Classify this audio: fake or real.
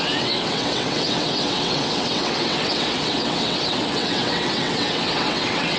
fake